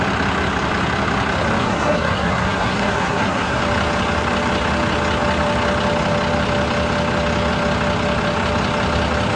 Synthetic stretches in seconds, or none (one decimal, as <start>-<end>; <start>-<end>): 1.6-3.6